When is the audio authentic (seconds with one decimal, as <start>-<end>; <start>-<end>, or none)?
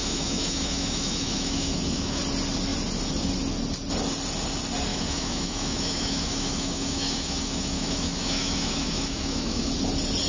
2.2-4.9; 9.7-10.3